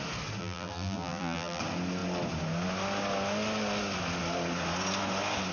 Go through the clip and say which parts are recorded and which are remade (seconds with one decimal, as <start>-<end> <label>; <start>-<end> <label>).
0.0-0.4 recorded; 0.4-1.6 remade; 1.6-5.5 recorded